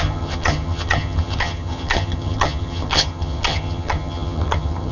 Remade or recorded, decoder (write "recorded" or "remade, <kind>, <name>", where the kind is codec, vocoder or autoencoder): remade, vocoder, HiFi-GAN